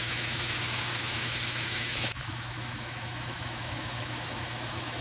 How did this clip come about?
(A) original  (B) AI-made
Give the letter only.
B